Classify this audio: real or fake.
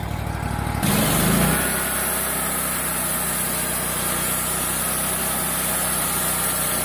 real